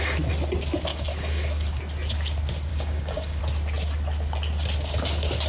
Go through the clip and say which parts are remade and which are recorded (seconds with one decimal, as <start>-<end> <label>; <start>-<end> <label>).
0.0-0.9 recorded; 0.9-1.8 remade; 1.8-2.7 recorded; 2.7-3.4 remade; 3.4-5.5 recorded